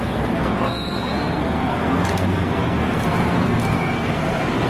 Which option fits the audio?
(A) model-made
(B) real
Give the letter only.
A